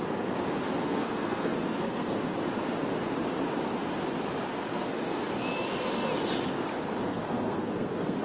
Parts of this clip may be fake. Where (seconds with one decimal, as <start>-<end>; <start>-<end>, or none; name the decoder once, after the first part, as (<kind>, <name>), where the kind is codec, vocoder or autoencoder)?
0.8-2.2 (codec, SNAC); 4.7-5.2; 7.1-8.2